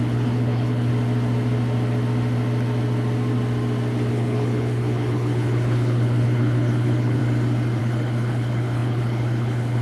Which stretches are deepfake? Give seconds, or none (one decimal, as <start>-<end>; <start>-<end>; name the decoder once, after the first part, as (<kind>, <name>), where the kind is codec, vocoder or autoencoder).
0.0-0.9 (codec, HILCodec); 4.1-7.2; 7.8-9.8